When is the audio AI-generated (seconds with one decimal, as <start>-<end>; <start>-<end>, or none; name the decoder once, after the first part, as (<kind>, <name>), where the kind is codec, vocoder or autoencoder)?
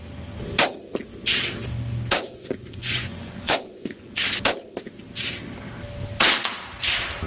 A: 2.2-4.1 (vocoder, Vocos)